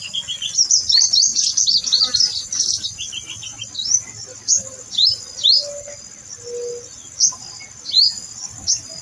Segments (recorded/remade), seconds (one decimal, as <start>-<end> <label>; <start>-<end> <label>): 0.0-9.0 recorded